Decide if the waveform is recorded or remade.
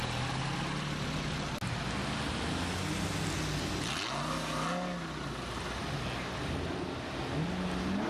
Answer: recorded